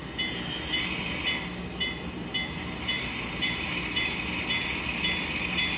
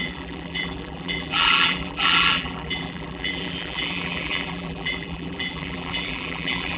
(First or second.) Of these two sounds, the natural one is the first